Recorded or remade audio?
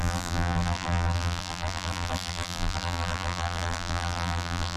remade